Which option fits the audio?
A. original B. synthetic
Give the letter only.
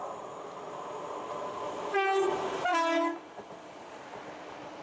A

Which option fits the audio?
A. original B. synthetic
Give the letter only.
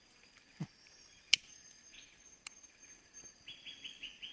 A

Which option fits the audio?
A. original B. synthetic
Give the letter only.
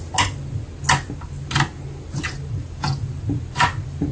A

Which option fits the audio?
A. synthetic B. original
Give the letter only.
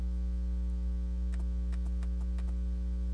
B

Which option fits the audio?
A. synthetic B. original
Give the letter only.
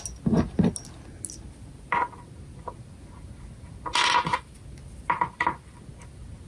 B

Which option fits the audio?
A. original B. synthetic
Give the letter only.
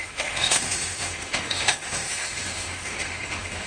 B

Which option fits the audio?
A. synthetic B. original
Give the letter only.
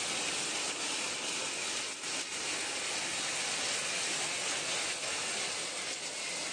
B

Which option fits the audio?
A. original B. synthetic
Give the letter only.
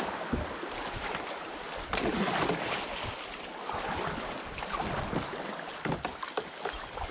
A